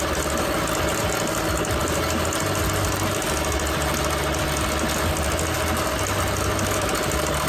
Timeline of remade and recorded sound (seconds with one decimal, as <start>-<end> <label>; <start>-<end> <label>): 0.0-7.5 recorded